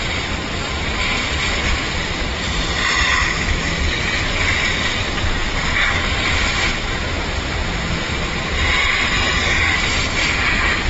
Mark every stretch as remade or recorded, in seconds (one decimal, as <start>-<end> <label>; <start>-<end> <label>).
0.0-10.9 recorded